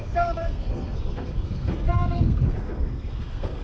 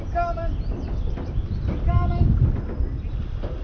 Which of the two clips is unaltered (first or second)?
second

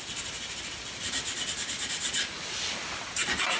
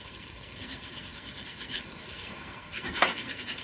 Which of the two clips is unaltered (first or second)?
first